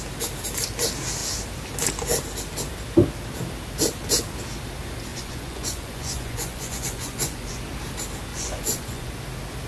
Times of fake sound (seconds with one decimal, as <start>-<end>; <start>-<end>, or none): 5.1-7.6; 8.3-9.1